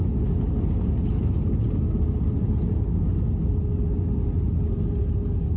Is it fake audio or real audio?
real